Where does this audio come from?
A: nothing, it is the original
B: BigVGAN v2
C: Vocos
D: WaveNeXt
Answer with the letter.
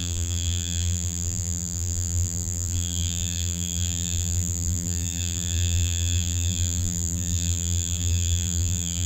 B